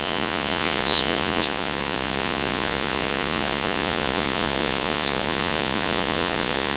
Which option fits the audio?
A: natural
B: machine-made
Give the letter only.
B